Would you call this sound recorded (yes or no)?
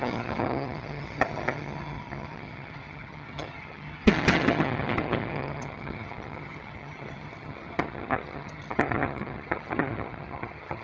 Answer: no